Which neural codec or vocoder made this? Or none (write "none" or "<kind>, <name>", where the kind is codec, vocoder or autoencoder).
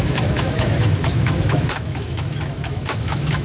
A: autoencoder, DAC-VAE